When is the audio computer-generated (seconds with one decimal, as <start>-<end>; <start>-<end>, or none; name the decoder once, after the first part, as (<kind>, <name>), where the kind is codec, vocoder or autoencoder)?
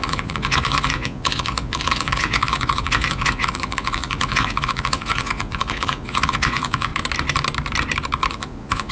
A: 0.0-6.9 (vocoder, Vocos); 8.3-8.9